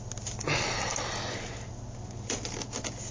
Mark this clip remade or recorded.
recorded